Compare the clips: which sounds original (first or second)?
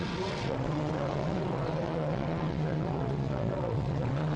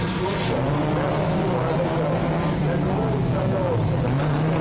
second